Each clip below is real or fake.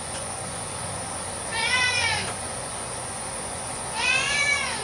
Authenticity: fake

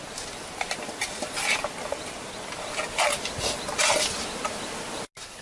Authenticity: real